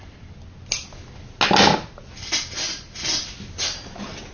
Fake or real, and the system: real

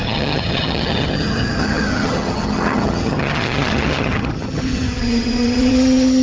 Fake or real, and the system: fake, vocoder, HiFi-GAN